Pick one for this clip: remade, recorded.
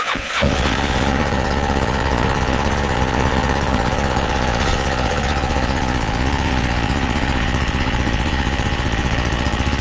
remade